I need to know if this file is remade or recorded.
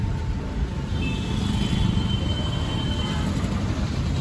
recorded